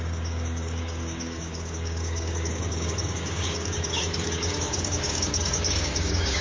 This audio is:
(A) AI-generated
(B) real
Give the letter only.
A